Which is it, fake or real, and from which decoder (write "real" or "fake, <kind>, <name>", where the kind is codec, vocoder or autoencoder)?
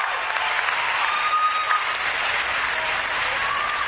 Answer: real